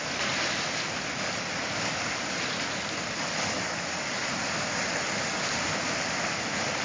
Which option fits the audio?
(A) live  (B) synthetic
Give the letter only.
A